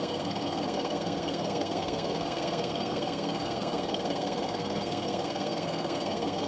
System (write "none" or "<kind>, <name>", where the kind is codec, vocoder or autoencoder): codec, SNAC